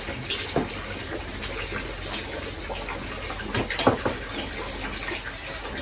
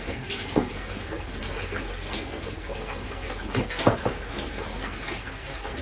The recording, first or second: first